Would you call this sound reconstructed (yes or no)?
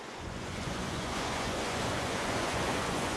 yes